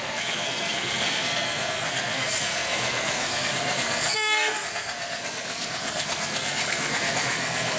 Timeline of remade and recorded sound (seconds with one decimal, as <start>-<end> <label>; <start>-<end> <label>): 0.0-7.8 remade